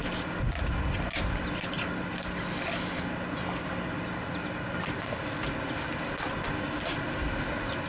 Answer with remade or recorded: recorded